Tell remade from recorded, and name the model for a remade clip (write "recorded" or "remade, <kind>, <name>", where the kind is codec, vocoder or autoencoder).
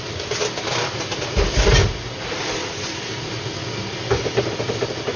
recorded